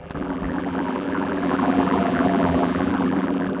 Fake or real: fake